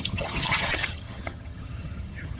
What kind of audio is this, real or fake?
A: fake